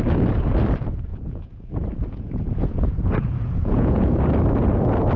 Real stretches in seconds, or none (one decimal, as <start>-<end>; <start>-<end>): 0.0-1.1; 4.2-5.2